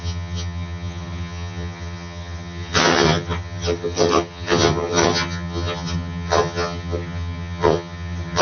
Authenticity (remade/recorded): remade